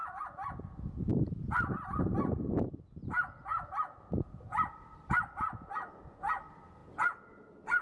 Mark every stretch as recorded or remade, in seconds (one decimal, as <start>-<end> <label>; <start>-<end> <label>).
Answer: 0.0-7.8 recorded